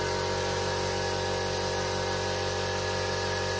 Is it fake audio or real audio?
real